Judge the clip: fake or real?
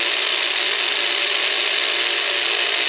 real